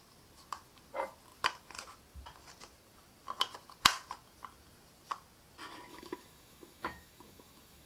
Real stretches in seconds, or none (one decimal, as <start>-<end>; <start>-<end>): 0.0-5.9